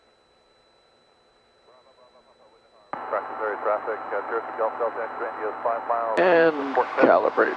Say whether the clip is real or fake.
fake